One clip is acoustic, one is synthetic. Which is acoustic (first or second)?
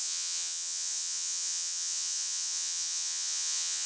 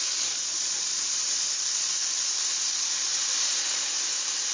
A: second